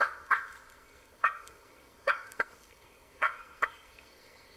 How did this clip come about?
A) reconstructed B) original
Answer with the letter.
A